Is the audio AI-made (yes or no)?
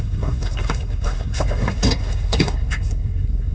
yes